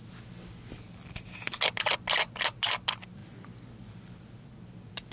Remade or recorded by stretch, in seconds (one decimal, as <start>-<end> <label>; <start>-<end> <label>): 0.0-5.1 recorded